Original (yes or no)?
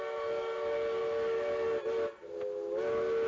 yes